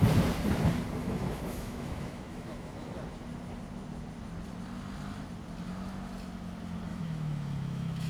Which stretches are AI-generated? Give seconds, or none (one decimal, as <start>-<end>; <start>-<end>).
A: 1.0-2.9; 6.9-8.1